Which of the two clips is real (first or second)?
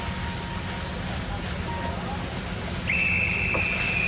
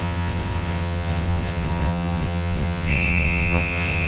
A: first